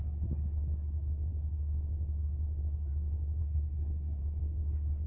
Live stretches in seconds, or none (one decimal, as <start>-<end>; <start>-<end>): 0.0-3.4; 4.2-5.1